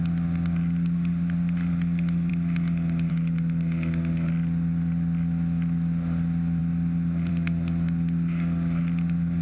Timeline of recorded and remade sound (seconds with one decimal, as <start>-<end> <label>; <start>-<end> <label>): 0.0-9.4 recorded